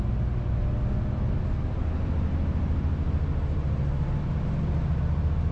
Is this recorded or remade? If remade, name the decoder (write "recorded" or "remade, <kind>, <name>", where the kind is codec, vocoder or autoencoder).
recorded